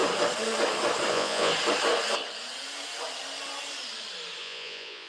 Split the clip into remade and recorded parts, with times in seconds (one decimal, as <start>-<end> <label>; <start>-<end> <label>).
0.0-1.1 recorded; 1.1-1.5 remade; 1.5-4.4 recorded; 4.4-5.1 remade